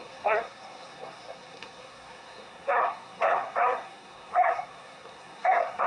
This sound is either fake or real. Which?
fake